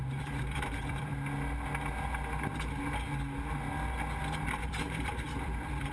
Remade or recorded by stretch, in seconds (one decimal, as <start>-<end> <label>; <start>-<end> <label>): 0.0-1.1 remade; 1.1-4.6 recorded; 4.6-5.9 remade